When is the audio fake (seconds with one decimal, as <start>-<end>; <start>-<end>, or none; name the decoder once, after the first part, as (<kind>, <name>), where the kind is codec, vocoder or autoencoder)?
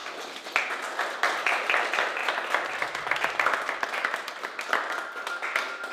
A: none